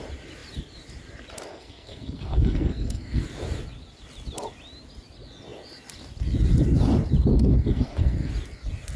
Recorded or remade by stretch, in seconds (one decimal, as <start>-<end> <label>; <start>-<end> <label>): 0.0-1.5 recorded; 1.5-3.2 remade; 3.2-7.3 recorded; 7.3-8.3 remade; 8.3-9.0 recorded